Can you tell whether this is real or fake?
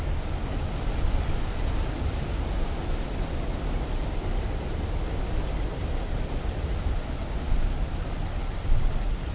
real